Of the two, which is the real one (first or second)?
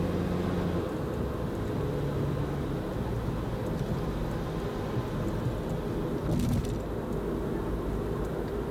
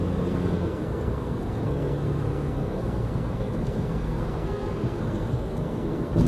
first